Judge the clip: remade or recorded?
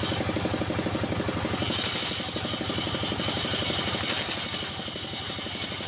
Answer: recorded